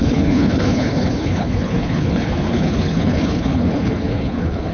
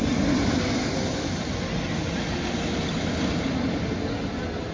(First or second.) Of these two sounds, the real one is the second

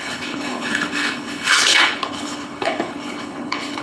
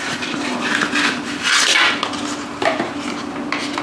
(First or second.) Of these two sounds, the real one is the second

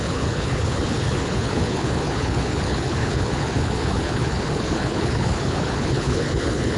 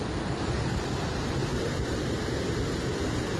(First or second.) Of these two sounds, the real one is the second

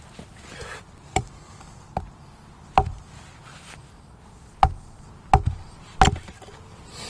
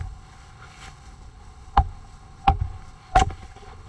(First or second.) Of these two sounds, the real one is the first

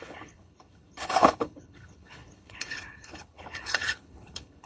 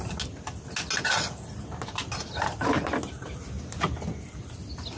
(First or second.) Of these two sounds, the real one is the second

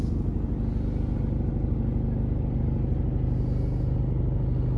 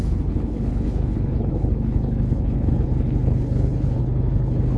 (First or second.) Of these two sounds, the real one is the first